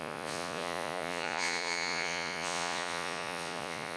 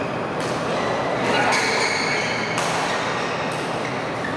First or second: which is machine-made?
first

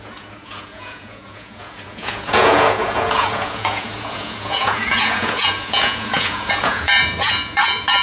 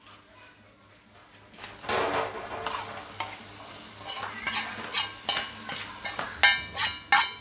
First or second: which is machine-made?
first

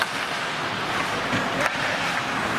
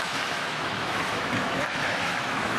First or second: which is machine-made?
second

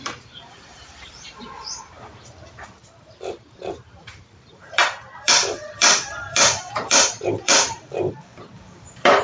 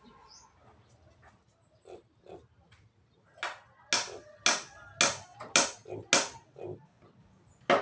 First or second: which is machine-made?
first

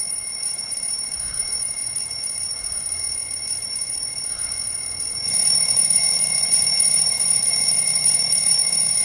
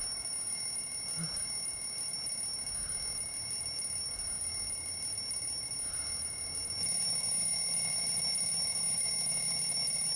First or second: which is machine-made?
first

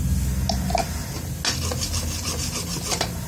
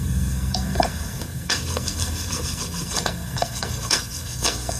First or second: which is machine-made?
second